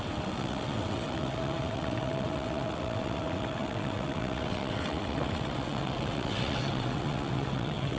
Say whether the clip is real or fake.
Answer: fake